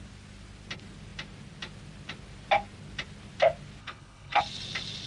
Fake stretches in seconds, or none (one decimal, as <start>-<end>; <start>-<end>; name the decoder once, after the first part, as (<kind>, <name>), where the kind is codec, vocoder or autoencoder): 3.8-4.4 (codec, HILCodec)